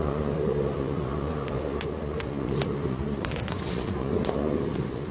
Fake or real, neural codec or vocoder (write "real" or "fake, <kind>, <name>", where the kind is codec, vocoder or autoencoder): fake, vocoder, Vocos